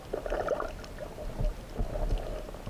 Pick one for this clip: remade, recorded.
recorded